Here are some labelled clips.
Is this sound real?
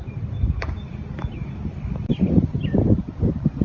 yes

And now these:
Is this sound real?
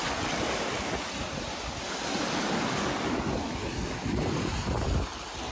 yes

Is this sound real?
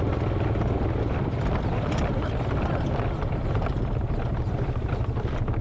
yes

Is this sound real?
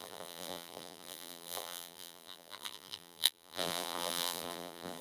no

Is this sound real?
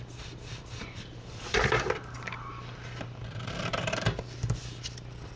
no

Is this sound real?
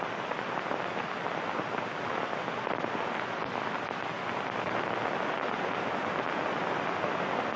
yes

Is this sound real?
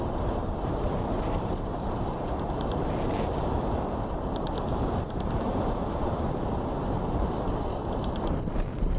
no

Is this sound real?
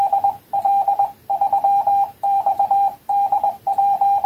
no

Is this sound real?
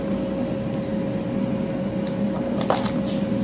yes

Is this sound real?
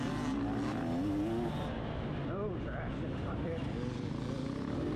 yes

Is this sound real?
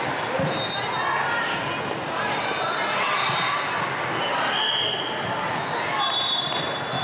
yes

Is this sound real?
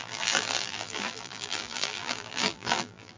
no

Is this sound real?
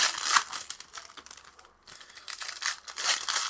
yes